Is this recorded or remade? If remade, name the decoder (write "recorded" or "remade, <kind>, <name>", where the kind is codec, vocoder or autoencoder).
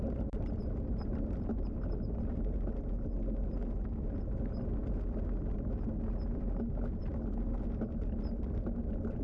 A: recorded